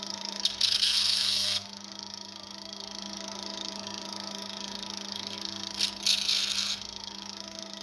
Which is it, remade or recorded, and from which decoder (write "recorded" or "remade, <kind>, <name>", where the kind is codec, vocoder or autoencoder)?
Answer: remade, codec, SNAC